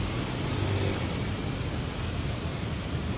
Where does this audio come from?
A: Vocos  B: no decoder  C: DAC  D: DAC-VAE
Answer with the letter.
B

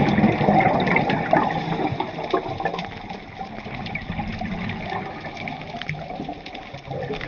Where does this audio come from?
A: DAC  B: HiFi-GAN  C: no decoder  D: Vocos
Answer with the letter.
C